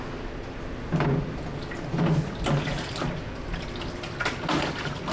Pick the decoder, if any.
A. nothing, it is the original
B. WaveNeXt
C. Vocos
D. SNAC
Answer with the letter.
A